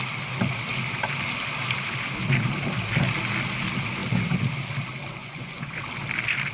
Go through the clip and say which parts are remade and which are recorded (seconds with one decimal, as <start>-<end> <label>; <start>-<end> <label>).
0.0-5.2 recorded; 5.2-5.8 remade; 5.8-6.5 recorded